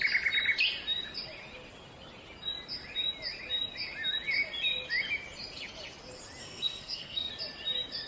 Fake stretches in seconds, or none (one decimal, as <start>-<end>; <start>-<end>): 6.4-7.3